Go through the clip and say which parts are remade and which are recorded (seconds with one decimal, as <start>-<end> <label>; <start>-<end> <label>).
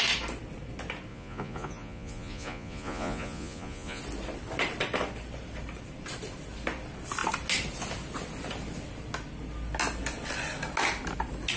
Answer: 0.0-1.1 recorded; 1.1-4.0 remade; 4.0-11.6 recorded